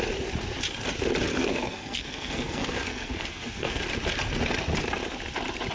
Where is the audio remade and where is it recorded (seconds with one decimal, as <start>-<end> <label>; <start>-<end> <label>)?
0.0-1.3 recorded; 1.3-3.8 remade; 3.8-5.7 recorded